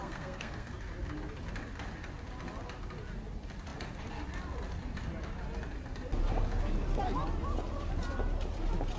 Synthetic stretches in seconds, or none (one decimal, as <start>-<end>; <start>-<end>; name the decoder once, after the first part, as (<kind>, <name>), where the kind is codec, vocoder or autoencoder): 0.0-0.7 (codec, SNAC)

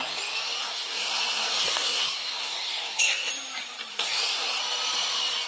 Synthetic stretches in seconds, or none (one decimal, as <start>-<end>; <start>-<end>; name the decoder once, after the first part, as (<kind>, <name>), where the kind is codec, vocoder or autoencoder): 0.6-3.3 (codec, SNAC); 3.9-4.6

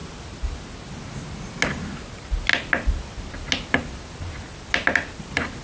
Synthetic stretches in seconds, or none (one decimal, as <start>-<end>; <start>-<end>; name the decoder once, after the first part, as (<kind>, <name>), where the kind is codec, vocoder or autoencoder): none

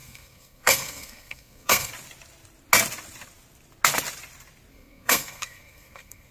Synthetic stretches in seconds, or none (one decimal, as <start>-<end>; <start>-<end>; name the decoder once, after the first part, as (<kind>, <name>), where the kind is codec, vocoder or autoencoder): 0.0-1.9 (codec, SNAC); 4.7-6.3

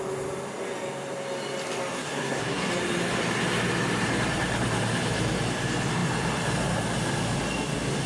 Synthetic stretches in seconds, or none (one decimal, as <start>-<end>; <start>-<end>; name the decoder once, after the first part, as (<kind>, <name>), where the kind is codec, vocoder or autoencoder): 1.9-2.7 (codec, SNAC)

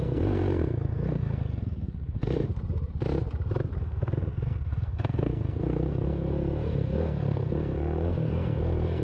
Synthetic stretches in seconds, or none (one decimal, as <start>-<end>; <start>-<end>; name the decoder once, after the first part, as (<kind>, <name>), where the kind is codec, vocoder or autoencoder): 0.0-2.5 (codec, SNAC); 3.8-9.0

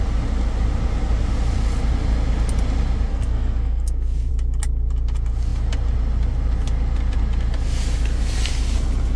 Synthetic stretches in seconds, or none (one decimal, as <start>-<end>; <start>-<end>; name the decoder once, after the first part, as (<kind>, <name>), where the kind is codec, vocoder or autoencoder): 3.1-4.3 (codec, SNAC)